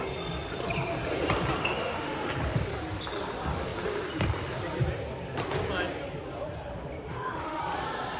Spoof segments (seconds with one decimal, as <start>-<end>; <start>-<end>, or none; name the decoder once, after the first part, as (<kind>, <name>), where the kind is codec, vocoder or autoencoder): 1.6-2.3 (autoencoder, DAC-VAE); 7.1-7.6